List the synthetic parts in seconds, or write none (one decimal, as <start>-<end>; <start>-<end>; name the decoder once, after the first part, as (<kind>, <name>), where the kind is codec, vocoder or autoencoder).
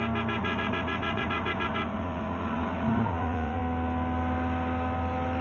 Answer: 0.4-3.6 (vocoder, Vocos)